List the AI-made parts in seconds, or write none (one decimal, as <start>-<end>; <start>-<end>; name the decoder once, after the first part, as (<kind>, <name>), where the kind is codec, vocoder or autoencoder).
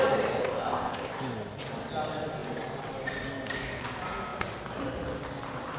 0.4-1.1 (codec, ZipCodec)